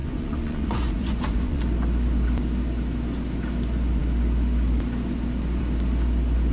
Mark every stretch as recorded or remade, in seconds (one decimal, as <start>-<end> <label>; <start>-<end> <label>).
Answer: 0.0-1.6 remade; 1.6-6.5 recorded